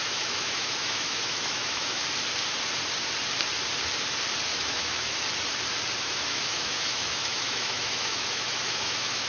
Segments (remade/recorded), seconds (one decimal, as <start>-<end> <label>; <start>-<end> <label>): 0.0-2.0 remade; 2.0-4.5 recorded; 4.5-5.1 remade; 5.1-6.0 recorded; 6.0-9.3 remade